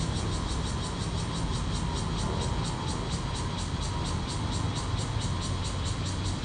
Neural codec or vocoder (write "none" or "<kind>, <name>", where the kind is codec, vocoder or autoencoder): none